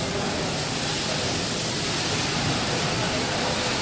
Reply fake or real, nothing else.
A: real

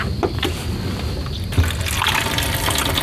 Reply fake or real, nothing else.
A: real